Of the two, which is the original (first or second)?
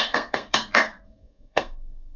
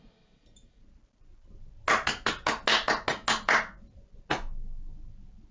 second